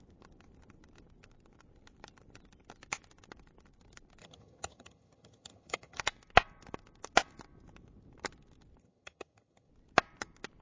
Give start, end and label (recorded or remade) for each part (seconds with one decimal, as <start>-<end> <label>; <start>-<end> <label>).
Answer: 0.0-4.2 recorded; 4.2-6.0 remade; 6.0-8.8 recorded; 8.8-9.7 remade; 9.7-10.6 recorded